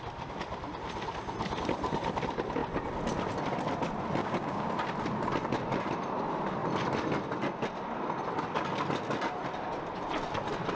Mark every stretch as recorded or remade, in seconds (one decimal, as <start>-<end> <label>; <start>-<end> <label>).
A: 0.0-4.2 recorded; 4.2-4.7 remade; 4.7-10.8 recorded